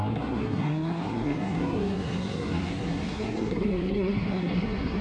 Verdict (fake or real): fake